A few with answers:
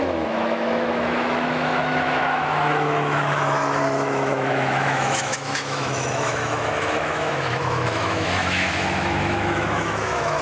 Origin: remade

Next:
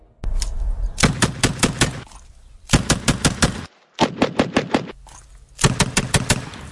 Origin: recorded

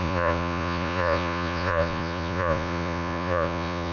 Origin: remade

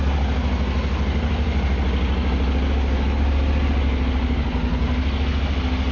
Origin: recorded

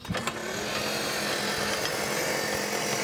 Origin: recorded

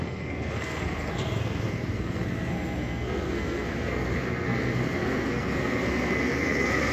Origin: remade